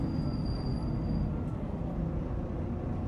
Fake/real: real